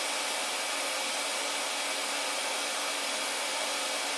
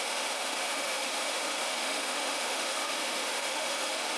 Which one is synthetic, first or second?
second